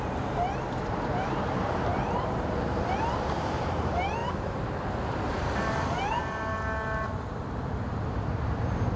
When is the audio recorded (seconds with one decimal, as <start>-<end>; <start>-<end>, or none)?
6.2-7.9